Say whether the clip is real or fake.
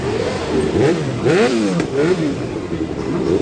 fake